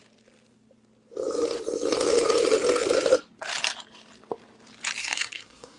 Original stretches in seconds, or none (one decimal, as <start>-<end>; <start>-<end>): 0.0-5.0